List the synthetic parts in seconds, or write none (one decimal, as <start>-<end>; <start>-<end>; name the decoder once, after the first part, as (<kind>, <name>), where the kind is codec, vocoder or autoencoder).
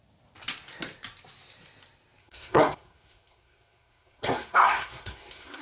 2.2-5.6 (codec, SNAC)